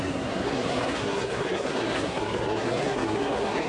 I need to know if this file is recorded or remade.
remade